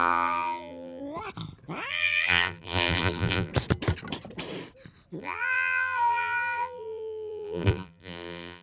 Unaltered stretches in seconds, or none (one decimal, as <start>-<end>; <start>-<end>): 1.0-1.9; 3.5-5.2

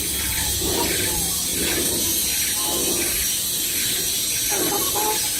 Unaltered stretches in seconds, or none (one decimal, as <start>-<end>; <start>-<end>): 0.0-5.4

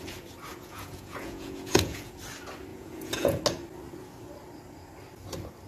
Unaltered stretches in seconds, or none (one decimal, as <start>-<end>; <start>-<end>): 0.0-0.5; 2.1-2.7; 3.4-5.7

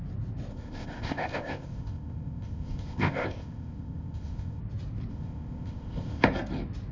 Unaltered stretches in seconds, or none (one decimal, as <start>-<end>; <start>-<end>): 0.0-0.5; 4.6-5.1; 6.2-6.9